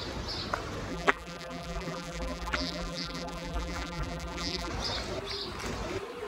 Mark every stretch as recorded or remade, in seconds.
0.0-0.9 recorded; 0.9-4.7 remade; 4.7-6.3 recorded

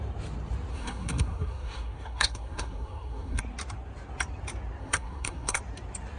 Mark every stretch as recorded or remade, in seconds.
0.0-0.7 recorded; 0.7-3.4 remade; 3.4-4.8 recorded; 4.8-5.6 remade; 5.6-6.2 recorded

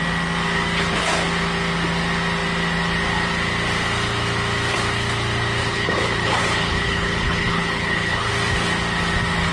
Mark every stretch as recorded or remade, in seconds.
0.0-5.6 recorded; 5.6-8.3 remade; 8.3-9.5 recorded

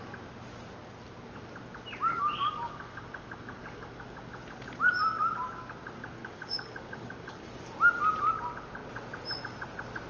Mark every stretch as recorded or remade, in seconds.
0.0-2.2 recorded; 2.2-4.3 remade; 4.3-6.2 recorded; 6.2-7.6 remade; 7.6-10.1 recorded

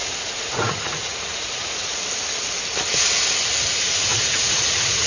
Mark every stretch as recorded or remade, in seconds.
0.0-1.9 remade; 1.9-3.7 recorded; 3.7-5.1 remade